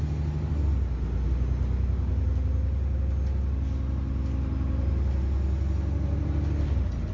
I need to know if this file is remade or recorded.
recorded